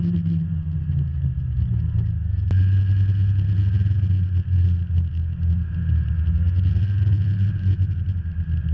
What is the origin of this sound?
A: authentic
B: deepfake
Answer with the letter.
A